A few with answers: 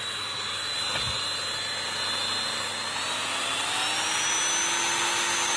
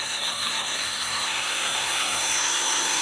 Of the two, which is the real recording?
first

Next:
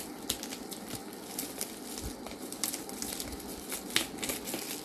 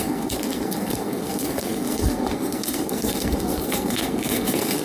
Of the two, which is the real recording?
first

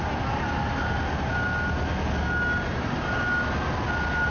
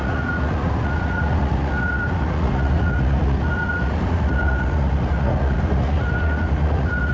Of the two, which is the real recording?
first